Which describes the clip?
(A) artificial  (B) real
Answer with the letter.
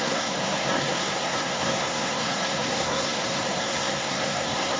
A